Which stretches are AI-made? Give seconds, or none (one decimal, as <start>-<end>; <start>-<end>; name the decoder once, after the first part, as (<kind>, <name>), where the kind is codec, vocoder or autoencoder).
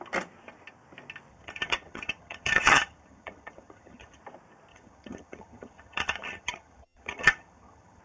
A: 1.3-4.2 (vocoder, HiFi-GAN); 4.7-8.0